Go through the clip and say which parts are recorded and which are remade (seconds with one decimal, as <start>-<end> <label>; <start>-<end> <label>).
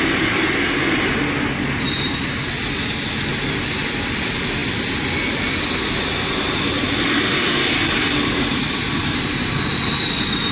0.0-10.5 recorded